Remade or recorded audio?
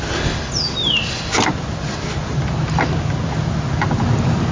recorded